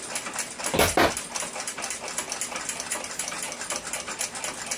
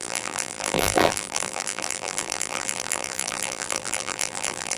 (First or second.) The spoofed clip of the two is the second